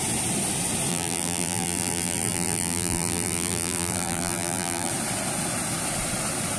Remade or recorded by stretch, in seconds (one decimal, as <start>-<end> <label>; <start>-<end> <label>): 0.0-0.9 recorded; 0.9-4.9 remade; 4.9-6.6 recorded